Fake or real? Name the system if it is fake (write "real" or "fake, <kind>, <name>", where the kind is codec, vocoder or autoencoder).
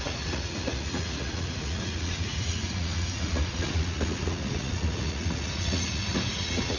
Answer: fake, vocoder, Vocos